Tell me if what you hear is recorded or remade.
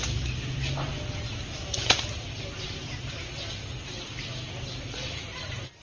recorded